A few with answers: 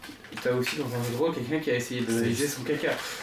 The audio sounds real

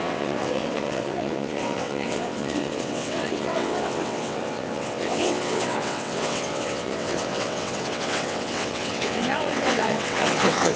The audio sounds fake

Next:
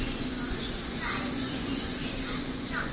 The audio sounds fake